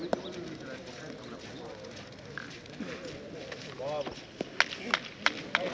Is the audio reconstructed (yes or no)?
no